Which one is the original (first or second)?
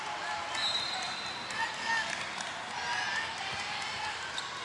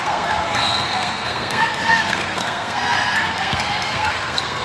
first